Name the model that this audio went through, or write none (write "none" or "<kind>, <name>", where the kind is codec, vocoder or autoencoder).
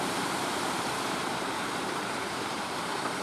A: vocoder, BigVGAN v2